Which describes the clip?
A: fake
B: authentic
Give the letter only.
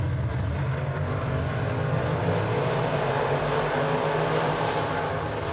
B